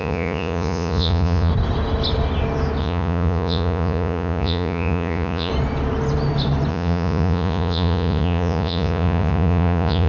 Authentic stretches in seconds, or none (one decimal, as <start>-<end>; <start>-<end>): 1.5-2.8; 5.5-6.7